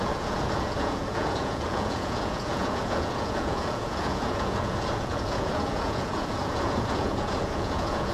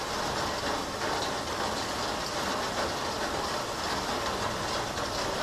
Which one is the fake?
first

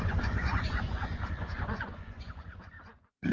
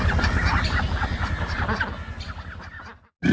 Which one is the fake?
first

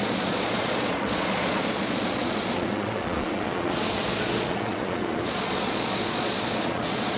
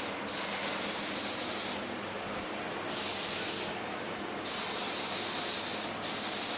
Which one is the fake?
first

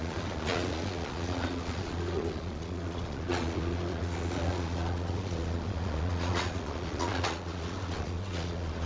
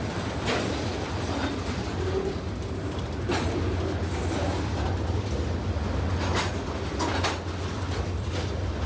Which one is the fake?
first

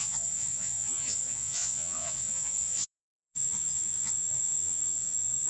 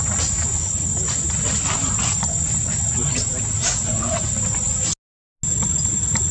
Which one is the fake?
first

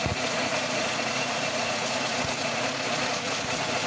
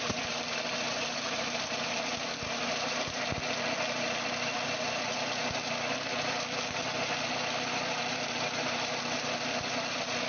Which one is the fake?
first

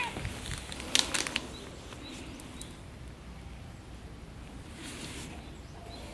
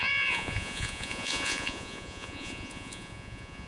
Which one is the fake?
second